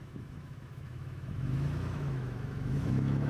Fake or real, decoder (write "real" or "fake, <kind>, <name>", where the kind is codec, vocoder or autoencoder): fake, autoencoder, DAC-VAE